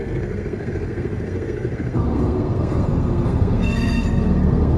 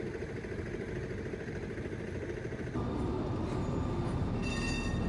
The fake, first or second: first